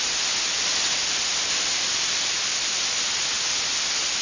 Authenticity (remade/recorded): recorded